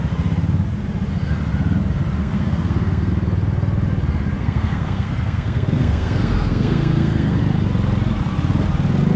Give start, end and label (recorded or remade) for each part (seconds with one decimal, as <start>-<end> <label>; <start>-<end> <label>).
0.0-2.2 recorded; 2.2-3.1 remade; 3.1-4.4 recorded; 4.4-7.4 remade; 7.4-9.2 recorded